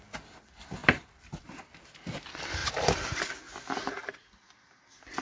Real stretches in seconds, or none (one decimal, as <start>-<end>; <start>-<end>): 0.0-0.8; 1.4-2.6; 3.2-5.2